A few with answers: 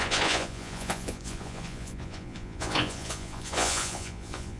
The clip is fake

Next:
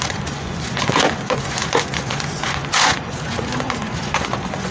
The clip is fake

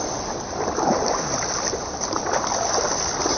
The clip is real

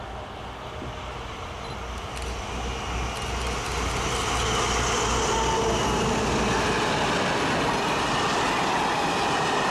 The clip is real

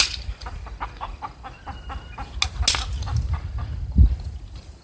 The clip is real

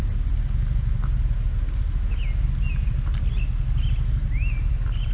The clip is real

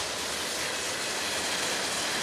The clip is real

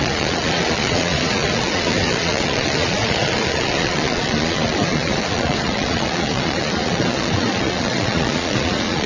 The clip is fake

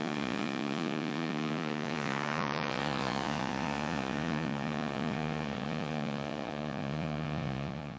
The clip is fake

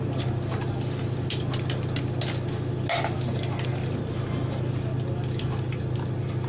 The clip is real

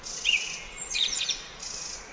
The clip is fake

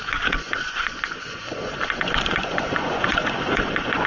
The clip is fake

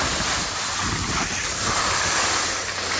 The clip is real